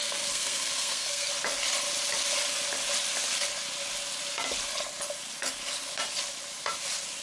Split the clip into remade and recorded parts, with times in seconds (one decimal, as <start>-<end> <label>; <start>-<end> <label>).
0.0-1.3 remade; 1.3-7.2 recorded